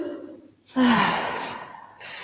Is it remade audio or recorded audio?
recorded